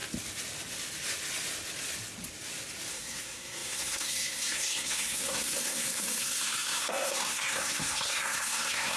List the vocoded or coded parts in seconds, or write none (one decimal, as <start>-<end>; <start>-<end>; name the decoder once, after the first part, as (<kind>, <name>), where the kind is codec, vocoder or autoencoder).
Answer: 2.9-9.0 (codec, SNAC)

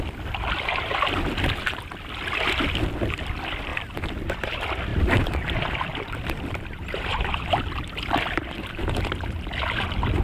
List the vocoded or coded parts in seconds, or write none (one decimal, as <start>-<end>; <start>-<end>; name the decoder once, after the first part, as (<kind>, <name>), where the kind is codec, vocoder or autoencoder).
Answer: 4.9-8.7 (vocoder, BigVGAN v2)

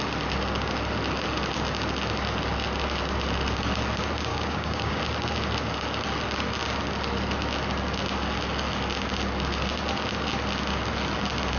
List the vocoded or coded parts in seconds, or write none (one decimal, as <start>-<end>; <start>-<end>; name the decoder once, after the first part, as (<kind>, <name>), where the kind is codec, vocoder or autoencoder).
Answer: 4.3-5.0 (codec, DAC)

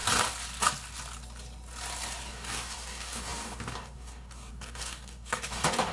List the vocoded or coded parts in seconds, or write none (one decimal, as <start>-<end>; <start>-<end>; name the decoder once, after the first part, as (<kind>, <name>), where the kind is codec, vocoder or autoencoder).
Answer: 2.3-5.9 (codec, DAC)

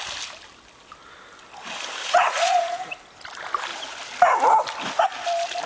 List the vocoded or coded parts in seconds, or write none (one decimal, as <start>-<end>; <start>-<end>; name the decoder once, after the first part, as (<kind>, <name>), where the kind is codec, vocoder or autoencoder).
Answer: 2.0-2.9 (vocoder, Vocos)

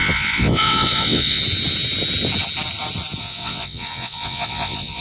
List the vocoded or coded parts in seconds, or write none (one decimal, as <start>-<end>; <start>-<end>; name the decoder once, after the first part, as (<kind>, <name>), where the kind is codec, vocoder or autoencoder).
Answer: 0.0-1.4 (vocoder, WaveNeXt); 3.2-5.0

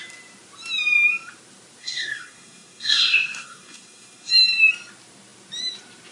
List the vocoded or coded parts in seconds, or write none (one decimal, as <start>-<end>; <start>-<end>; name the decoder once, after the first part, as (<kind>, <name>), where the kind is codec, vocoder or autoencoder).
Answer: 1.8-4.3 (codec, SNAC)

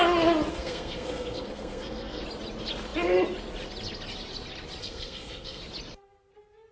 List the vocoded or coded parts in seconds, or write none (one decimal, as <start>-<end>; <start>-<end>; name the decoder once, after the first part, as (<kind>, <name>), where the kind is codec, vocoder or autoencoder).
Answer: 0.5-2.2 (codec, SNAC); 4.8-5.6